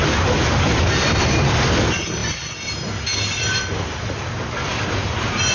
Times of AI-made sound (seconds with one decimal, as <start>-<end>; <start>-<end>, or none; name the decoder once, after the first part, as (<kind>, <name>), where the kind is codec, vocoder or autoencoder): none